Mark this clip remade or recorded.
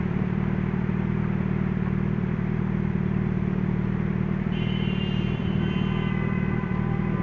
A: remade